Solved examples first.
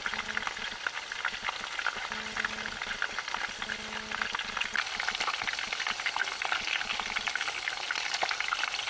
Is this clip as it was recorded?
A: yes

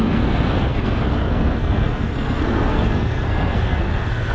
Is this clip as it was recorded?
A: no